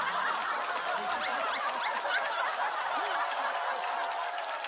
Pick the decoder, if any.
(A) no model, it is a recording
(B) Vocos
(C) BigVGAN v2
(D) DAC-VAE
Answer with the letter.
A